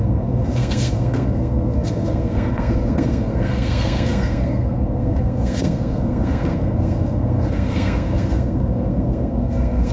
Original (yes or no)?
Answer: no